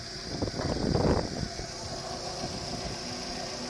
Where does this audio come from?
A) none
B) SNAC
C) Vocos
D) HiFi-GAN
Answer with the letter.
A